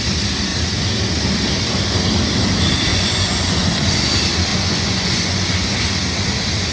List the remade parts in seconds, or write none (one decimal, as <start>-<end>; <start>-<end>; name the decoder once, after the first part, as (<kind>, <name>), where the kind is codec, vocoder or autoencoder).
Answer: 2.9-4.1 (vocoder, Vocos); 4.5-5.8